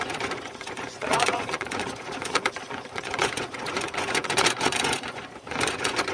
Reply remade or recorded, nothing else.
remade